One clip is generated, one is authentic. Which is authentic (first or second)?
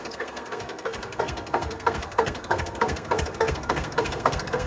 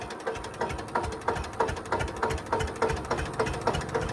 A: second